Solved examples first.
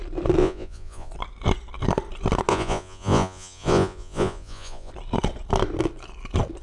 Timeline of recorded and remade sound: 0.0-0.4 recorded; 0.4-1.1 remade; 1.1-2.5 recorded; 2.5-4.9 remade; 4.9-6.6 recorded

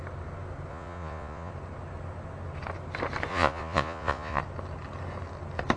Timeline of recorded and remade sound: 0.0-0.7 recorded; 0.7-1.5 remade; 1.5-3.3 recorded; 3.3-4.4 remade; 4.4-5.8 recorded

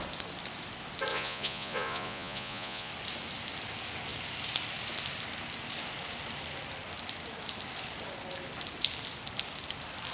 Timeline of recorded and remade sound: 0.0-1.1 recorded; 1.1-2.9 remade; 2.9-10.1 recorded

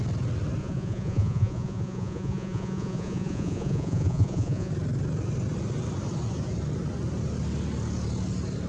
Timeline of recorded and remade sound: 0.0-0.6 recorded; 0.6-4.7 remade; 4.7-8.7 recorded

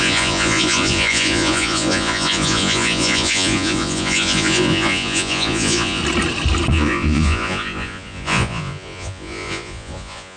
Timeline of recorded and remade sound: 0.0-6.0 remade; 6.0-6.7 recorded; 6.7-10.4 remade

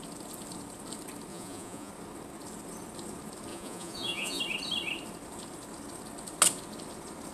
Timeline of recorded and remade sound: 0.0-1.3 recorded; 1.3-1.9 remade; 1.9-3.5 recorded; 3.5-4.4 remade; 4.4-7.3 recorded

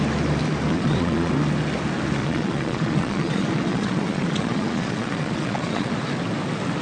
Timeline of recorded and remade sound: 0.0-0.7 recorded; 0.7-1.3 remade; 1.3-2.2 recorded; 2.2-5.9 remade; 5.9-6.8 recorded